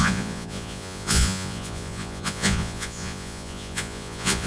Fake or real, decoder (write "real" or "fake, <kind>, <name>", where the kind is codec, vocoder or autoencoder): fake, vocoder, Vocos